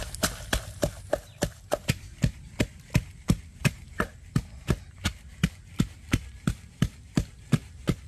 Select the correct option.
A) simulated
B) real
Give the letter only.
B